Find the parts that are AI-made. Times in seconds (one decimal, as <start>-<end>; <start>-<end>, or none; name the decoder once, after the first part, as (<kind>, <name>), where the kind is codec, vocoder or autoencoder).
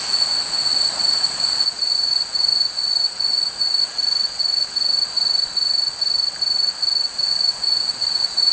0.0-0.7 (vocoder, Vocos); 1.2-3.9; 7.2-8.5